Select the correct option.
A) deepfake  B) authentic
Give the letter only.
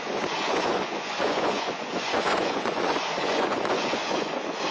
A